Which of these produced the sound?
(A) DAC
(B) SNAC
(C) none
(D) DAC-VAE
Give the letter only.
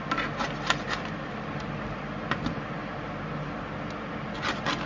C